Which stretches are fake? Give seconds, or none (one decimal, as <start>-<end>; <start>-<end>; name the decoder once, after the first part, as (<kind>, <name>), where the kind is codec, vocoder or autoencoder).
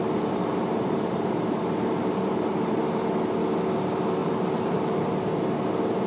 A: 0.5-2.8 (vocoder, BigVGAN v2); 4.2-5.1